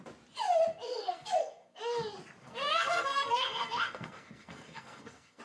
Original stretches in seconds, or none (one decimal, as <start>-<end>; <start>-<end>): 0.0-0.7; 1.8-2.4